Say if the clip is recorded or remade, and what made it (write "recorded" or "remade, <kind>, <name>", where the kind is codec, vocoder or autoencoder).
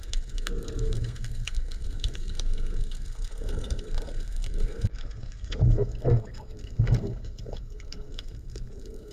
remade, codec, SNAC